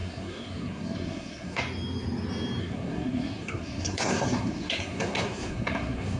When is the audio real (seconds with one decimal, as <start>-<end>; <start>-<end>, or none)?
1.6-2.6